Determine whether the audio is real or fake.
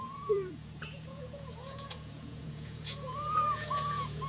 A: fake